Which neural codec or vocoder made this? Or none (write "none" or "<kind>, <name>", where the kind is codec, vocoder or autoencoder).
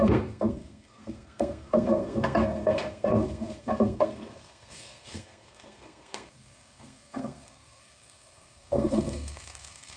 codec, SNAC